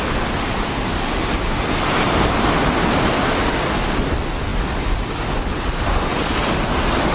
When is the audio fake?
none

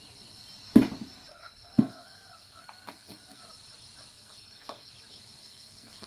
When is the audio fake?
1.3-3.4; 4.1-4.9; 5.4-6.1

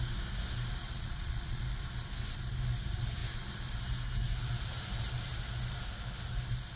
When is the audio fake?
0.8-1.6

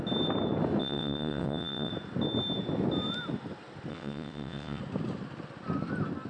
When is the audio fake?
0.8-1.9; 3.9-4.8

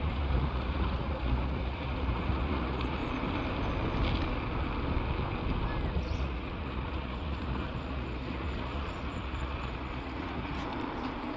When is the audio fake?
0.0-3.0; 5.9-10.6

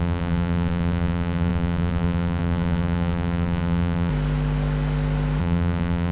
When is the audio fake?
0.0-4.1; 5.4-6.1

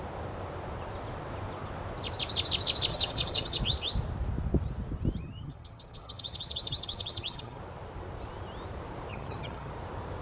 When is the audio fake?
2.9-3.6; 5.2-7.6; 9.1-9.7